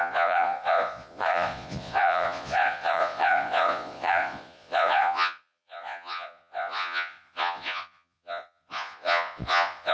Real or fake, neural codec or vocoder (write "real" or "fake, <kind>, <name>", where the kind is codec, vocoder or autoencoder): fake, vocoder, Vocos